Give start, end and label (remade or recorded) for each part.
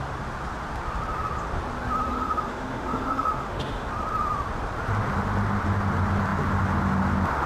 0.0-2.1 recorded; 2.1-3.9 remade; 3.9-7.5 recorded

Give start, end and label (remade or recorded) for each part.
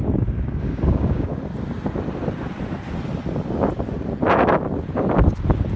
0.0-1.4 remade; 1.4-5.8 recorded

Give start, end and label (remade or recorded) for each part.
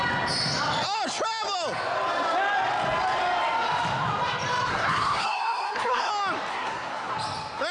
0.0-4.7 recorded; 4.7-6.1 remade; 6.1-6.5 recorded; 6.5-7.1 remade; 7.1-7.7 recorded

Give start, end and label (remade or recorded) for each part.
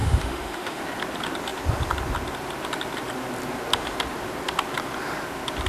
0.0-0.8 remade; 0.8-5.7 recorded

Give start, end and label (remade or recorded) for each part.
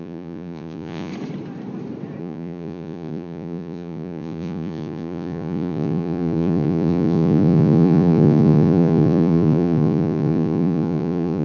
0.0-1.1 remade; 1.1-2.2 recorded; 2.2-11.4 remade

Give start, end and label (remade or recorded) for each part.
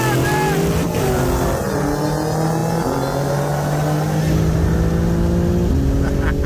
0.0-6.5 recorded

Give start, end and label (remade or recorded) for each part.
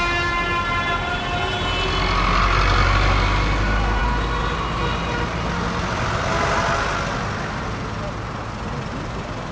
0.0-9.5 recorded